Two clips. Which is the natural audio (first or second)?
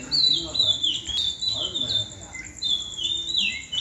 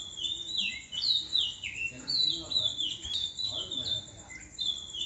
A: first